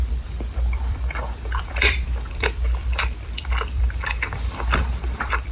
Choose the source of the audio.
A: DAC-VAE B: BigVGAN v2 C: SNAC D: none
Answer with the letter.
B